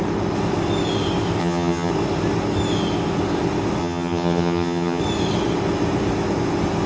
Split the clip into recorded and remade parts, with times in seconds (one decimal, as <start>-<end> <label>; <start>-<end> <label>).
0.0-1.4 recorded; 1.4-1.9 remade; 1.9-3.8 recorded; 3.8-5.0 remade; 5.0-6.9 recorded